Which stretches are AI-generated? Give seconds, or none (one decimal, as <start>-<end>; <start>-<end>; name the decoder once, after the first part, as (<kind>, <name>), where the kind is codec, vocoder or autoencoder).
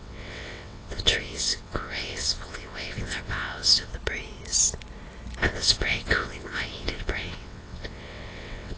0.0-3.9 (vocoder, WaveNeXt); 5.4-8.8